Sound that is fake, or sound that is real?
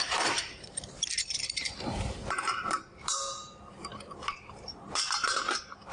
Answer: fake